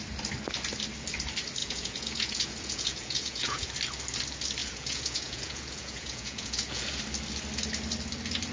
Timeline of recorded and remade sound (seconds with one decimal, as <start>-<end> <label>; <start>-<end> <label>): 0.0-1.6 recorded; 1.6-3.7 remade; 3.7-4.6 recorded; 4.6-7.0 remade; 7.0-8.5 recorded